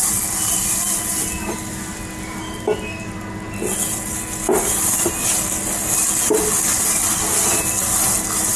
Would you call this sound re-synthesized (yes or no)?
no